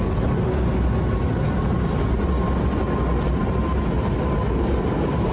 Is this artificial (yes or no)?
no